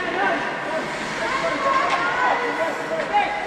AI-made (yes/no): no